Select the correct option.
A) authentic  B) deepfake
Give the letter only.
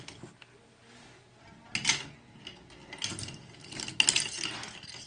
A